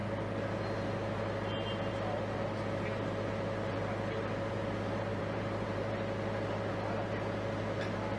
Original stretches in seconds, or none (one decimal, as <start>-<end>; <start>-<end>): 0.0-5.1; 5.9-8.2